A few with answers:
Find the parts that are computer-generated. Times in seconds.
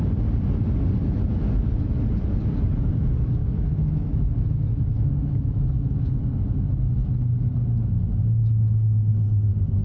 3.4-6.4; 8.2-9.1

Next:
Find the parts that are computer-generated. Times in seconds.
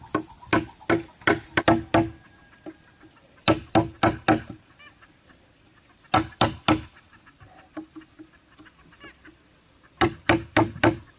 none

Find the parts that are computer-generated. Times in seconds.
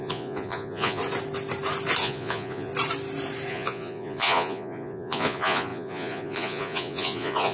0.0-1.0; 2.0-2.7; 3.5-7.5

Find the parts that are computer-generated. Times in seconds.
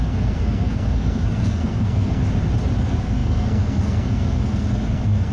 0.0-2.2; 2.8-5.3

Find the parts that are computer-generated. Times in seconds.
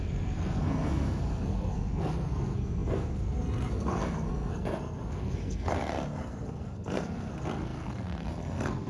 0.0-8.9